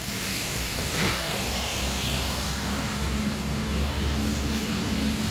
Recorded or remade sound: remade